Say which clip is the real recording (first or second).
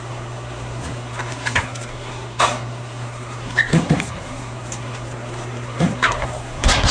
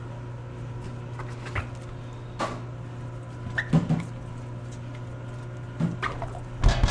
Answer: second